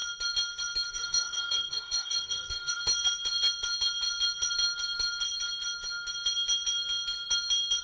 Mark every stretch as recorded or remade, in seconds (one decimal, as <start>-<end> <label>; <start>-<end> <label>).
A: 0.0-0.9 recorded; 0.9-2.8 remade; 2.8-7.8 recorded